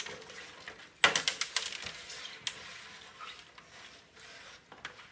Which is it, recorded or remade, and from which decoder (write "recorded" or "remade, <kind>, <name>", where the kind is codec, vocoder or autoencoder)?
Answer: recorded